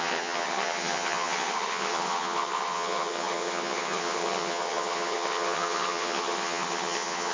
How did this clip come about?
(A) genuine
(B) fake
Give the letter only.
B